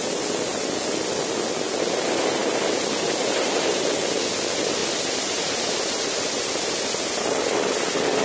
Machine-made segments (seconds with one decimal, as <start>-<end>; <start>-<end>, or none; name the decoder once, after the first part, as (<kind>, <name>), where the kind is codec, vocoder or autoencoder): none